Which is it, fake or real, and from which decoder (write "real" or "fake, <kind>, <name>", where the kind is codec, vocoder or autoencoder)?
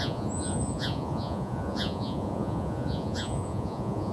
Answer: fake, vocoder, Vocos